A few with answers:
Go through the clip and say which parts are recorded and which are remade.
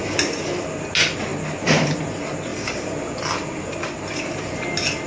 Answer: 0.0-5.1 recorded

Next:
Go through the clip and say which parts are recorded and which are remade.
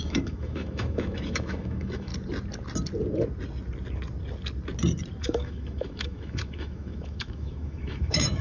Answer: 0.0-2.1 remade; 2.1-5.2 recorded; 5.2-8.4 remade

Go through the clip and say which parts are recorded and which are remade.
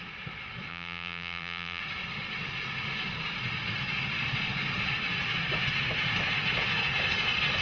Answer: 0.0-0.7 recorded; 0.7-1.8 remade; 1.8-7.6 recorded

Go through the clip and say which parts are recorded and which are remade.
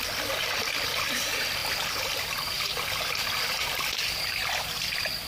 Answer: 0.0-5.3 recorded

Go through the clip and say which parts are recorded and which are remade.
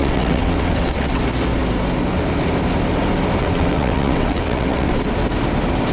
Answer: 0.0-1.2 remade; 1.2-3.4 recorded; 3.4-4.9 remade; 4.9-5.9 recorded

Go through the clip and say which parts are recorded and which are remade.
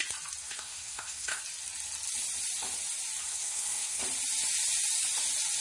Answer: 0.0-0.4 recorded; 0.4-1.4 remade; 1.4-3.3 recorded; 3.3-4.0 remade; 4.0-5.6 recorded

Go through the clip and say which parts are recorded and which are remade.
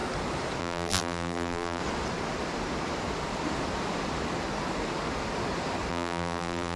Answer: 0.0-0.6 recorded; 0.6-1.8 remade; 1.8-5.9 recorded; 5.9-6.8 remade